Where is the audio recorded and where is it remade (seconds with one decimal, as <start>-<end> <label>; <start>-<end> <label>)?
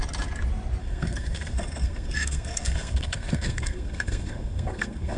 0.0-0.8 recorded; 0.8-5.2 remade